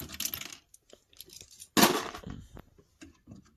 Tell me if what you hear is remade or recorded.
recorded